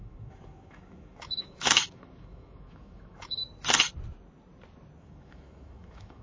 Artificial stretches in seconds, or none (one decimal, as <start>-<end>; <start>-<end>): 0.0-3.4; 5.0-6.2